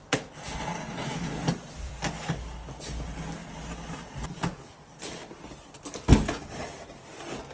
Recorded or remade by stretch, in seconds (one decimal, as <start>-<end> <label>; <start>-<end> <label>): 0.0-7.5 recorded